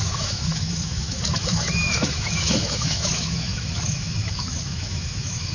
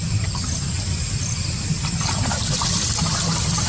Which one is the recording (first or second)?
second